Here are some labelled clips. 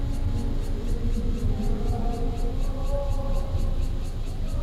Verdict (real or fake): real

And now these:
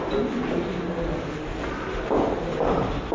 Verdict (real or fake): real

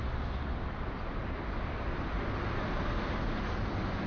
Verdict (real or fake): real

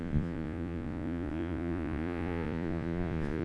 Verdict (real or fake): fake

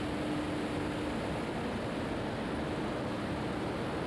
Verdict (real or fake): real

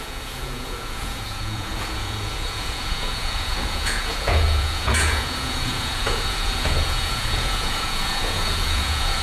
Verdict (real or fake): fake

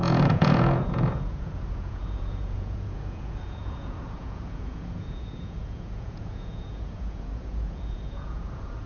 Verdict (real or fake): fake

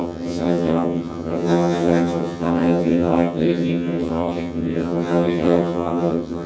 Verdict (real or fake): fake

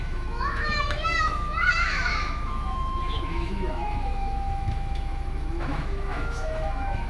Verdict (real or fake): fake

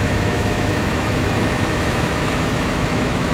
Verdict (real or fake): fake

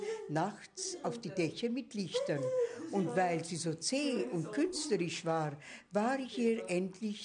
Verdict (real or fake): real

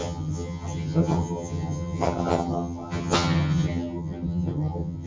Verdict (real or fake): fake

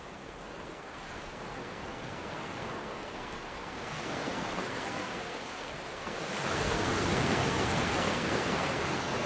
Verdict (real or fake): fake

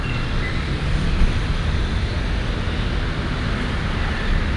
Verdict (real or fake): real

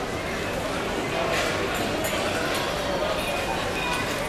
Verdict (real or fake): real